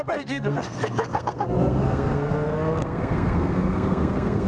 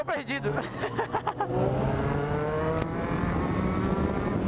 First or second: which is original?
second